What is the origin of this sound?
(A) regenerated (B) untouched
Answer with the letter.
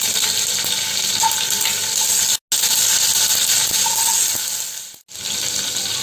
B